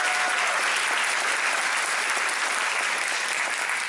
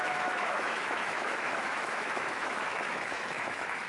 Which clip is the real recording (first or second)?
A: first